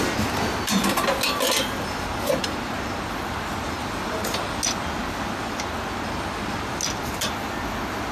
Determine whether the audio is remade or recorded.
recorded